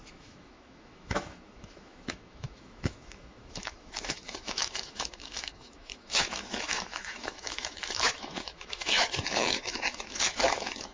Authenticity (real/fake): fake